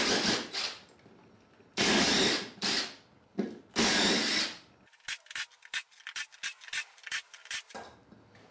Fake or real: real